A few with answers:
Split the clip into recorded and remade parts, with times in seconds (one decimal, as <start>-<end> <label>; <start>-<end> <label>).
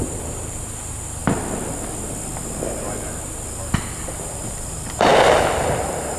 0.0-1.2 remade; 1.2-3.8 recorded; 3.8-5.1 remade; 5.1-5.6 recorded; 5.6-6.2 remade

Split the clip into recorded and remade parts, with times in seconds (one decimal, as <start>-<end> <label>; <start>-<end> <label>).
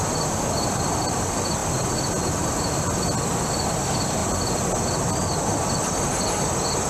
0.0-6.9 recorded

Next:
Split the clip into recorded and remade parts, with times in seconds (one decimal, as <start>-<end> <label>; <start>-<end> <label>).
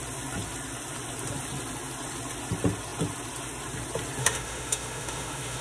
0.0-4.2 recorded; 4.2-5.6 remade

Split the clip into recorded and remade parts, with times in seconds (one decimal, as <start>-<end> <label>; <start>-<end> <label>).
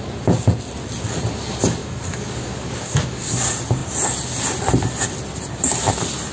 0.0-1.8 recorded; 1.8-3.3 remade; 3.3-6.3 recorded